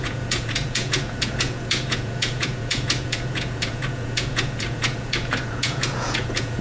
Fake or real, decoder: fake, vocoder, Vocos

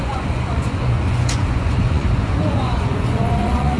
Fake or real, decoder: fake, vocoder, Vocos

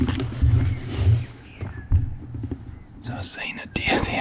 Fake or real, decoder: real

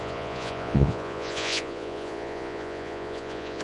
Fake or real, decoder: fake, vocoder, Vocos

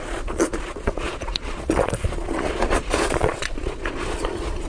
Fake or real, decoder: fake, vocoder, Vocos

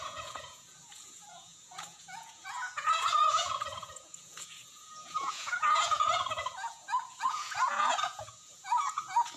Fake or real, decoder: fake, vocoder, Vocos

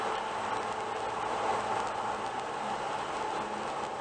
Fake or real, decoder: real